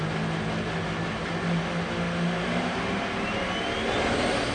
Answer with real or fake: real